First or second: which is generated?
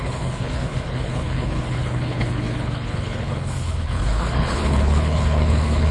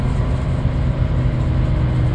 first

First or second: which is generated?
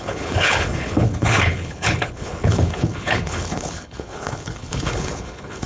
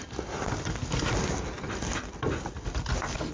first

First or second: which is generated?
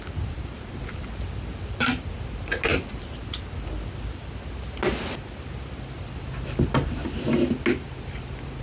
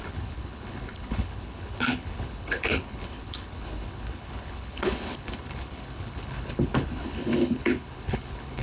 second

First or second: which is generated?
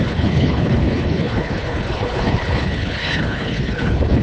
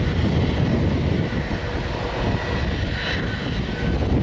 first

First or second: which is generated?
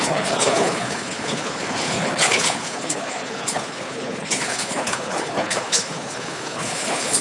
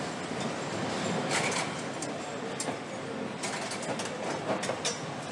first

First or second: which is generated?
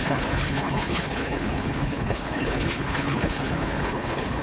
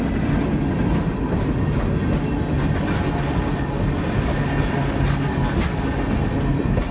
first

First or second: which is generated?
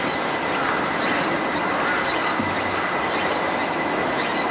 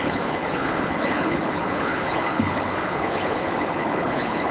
second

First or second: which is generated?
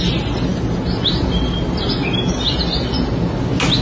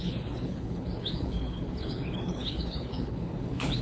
second